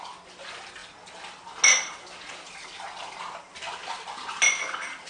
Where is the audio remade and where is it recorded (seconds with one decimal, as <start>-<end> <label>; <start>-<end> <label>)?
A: 0.0-5.1 recorded